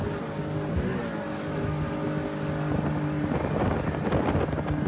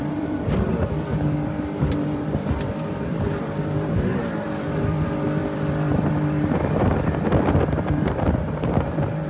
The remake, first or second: second